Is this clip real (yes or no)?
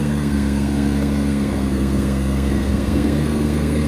no